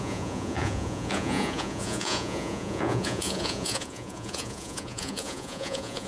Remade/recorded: remade